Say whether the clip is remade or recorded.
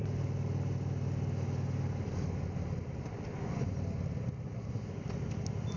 recorded